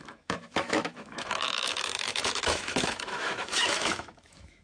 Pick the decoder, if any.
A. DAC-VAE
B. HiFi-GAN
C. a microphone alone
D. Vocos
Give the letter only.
A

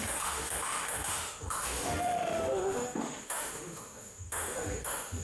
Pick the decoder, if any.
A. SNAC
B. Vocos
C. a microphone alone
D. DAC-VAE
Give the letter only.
D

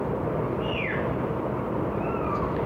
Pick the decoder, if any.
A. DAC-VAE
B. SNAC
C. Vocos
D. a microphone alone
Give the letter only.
D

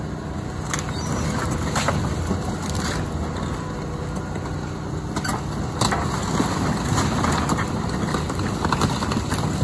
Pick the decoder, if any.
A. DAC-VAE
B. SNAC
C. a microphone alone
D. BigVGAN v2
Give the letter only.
C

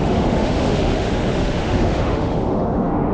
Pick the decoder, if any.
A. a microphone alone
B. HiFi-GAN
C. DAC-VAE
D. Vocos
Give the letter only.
C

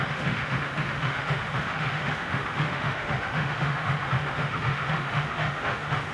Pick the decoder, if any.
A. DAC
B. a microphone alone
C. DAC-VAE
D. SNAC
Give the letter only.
C